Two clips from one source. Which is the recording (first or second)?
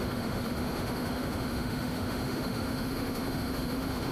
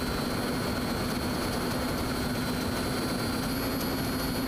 second